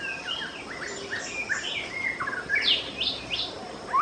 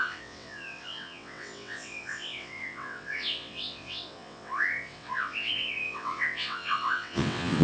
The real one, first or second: first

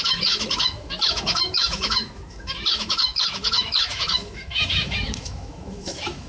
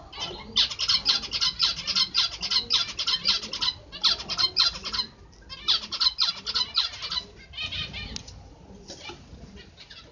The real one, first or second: second